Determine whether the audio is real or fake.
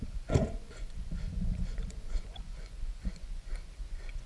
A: fake